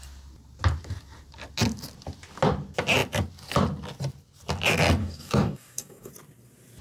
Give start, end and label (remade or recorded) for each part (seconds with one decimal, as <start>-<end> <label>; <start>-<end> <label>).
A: 0.0-5.0 recorded; 5.0-6.1 remade; 6.1-6.8 recorded